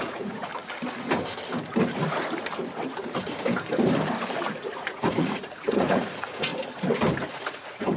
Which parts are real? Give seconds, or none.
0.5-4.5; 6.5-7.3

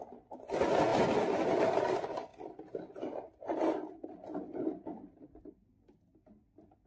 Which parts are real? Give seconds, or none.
0.0-6.9